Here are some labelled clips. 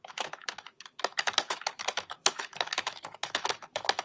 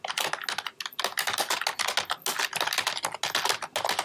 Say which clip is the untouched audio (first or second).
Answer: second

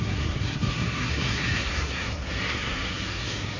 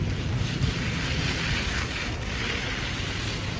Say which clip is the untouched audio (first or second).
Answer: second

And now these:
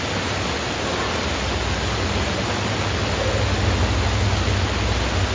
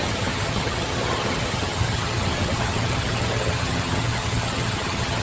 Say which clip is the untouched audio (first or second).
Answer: first